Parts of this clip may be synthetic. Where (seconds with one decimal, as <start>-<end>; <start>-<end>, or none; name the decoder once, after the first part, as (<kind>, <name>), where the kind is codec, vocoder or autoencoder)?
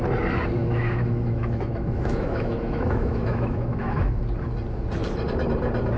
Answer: 0.6-4.2 (autoencoder, DAC-VAE)